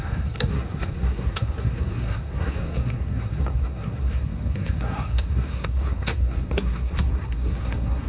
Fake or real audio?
fake